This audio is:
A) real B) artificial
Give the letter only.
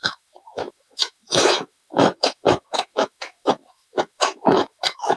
B